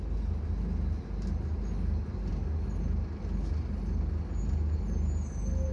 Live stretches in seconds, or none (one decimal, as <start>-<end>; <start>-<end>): 0.0-5.7